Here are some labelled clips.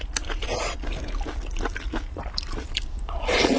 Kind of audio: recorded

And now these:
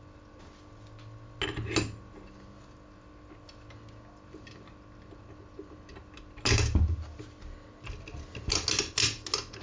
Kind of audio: recorded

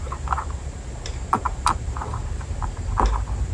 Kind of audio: recorded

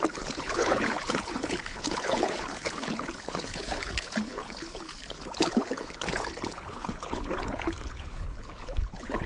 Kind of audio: remade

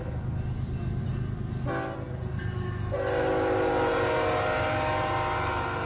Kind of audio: recorded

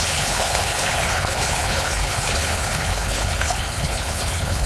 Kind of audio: remade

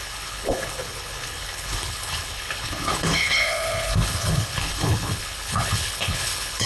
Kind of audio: remade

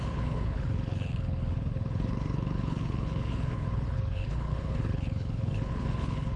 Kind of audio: remade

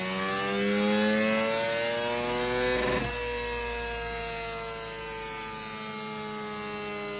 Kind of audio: recorded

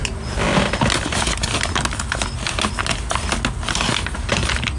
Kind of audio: recorded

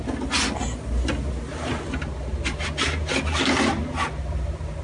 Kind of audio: recorded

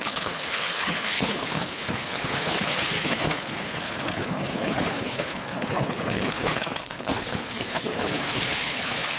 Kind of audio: remade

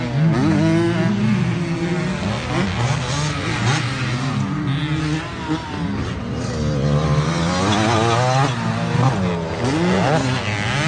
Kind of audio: recorded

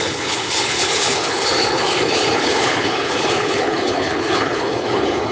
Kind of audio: remade